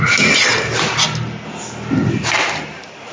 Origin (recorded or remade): recorded